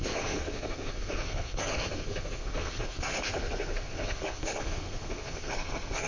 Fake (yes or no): yes